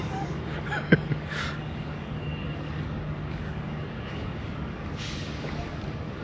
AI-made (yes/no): yes